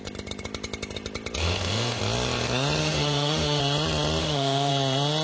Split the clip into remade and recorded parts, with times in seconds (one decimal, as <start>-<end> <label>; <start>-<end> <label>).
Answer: 0.0-1.4 recorded; 1.4-2.0 remade; 2.0-2.8 recorded; 2.8-3.6 remade; 3.6-4.2 recorded; 4.2-4.7 remade; 4.7-5.2 recorded